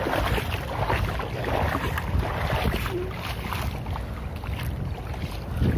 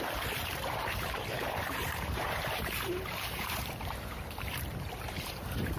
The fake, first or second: second